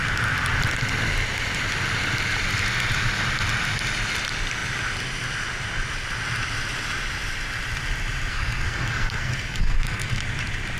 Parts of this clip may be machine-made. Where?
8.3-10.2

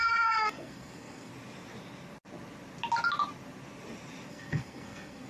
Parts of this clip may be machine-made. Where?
0.0-1.3; 4.3-5.3

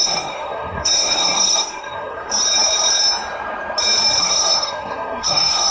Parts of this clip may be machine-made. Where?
0.0-2.3; 4.2-5.7

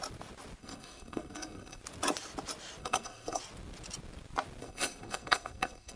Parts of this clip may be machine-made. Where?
0.6-1.8; 2.8-3.4; 4.6-6.0